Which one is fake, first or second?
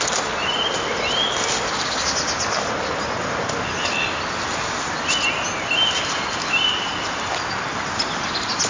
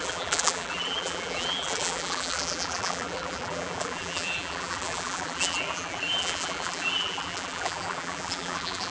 second